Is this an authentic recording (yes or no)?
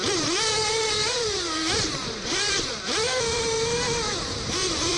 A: no